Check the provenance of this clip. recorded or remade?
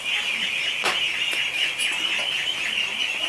recorded